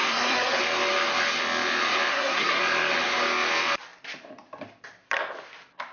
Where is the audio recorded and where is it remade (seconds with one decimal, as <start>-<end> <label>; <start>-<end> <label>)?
0.0-0.6 remade; 0.6-2.1 recorded; 2.1-2.6 remade; 2.6-5.9 recorded